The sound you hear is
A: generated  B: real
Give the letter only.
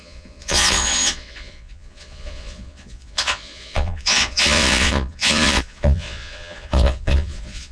A